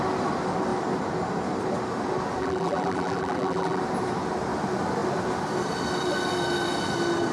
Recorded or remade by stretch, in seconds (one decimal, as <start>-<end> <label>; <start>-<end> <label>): 0.0-2.4 recorded; 2.4-3.8 remade; 3.8-7.3 recorded